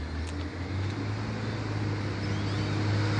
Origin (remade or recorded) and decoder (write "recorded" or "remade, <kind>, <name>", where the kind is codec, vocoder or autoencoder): recorded